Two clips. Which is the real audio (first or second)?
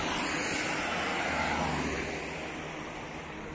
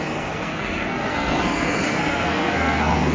first